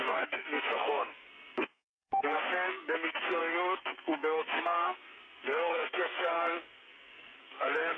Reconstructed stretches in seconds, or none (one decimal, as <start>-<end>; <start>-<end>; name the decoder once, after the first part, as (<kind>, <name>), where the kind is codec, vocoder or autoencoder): 0.0-8.0 (codec, SNAC)

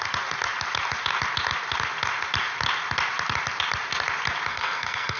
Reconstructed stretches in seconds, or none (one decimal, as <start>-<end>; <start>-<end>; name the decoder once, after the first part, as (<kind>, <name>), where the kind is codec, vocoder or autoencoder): 4.5-5.2 (codec, SNAC)

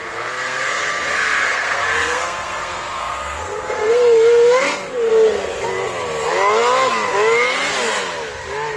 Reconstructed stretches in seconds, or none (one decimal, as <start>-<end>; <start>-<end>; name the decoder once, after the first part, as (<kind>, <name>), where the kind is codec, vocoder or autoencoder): 0.0-5.1 (codec, SNAC)

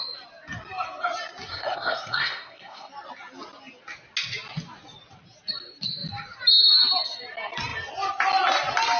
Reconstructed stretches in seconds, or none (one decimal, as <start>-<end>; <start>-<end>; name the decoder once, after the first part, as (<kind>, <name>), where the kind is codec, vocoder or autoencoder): 1.5-2.9 (codec, SNAC)

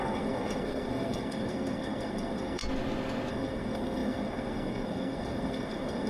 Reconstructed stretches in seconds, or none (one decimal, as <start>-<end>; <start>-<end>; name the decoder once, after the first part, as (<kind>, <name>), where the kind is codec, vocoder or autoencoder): 0.0-2.6 (codec, SNAC); 3.3-6.1